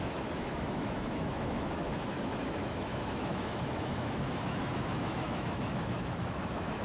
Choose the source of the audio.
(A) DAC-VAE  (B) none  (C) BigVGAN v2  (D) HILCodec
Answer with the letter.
A